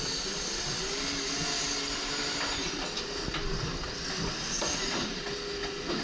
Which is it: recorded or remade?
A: recorded